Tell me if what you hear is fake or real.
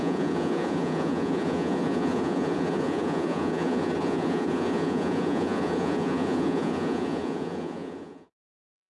fake